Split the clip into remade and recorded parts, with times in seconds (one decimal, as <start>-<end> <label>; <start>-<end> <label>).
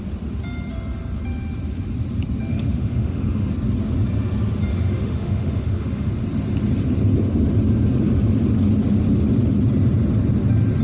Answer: 0.0-2.5 recorded; 2.5-3.5 remade; 3.5-4.7 recorded; 4.7-6.1 remade; 6.1-10.8 recorded